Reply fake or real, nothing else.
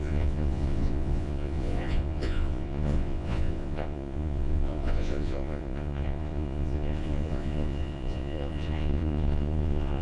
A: fake